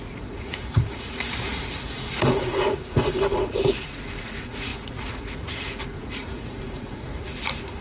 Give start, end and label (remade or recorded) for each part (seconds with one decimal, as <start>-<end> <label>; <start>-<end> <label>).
0.0-7.8 remade